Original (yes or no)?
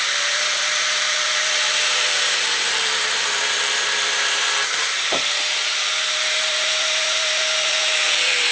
no